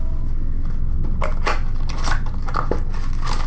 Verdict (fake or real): real